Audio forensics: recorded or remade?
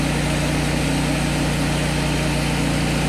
recorded